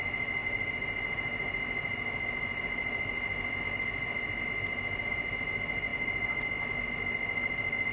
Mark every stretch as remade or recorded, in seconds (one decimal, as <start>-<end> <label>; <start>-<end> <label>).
0.0-7.9 recorded